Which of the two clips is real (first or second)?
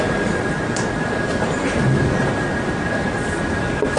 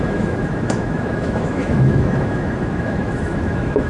first